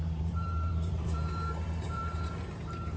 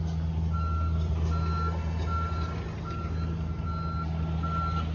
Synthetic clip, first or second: first